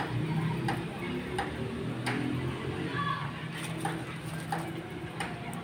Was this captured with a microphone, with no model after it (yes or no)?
yes